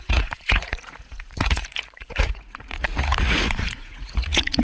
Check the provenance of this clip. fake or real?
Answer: fake